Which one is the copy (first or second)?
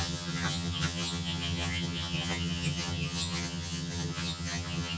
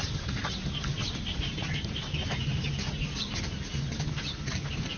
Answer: first